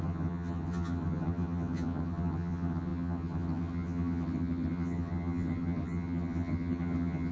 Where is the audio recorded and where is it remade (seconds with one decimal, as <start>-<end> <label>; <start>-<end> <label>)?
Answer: 0.0-7.3 remade